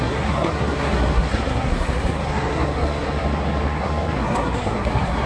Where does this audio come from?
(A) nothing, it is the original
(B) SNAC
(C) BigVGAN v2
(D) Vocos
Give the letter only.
B